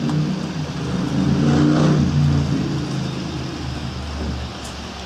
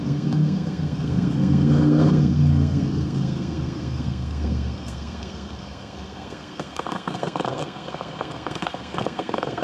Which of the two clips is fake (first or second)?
second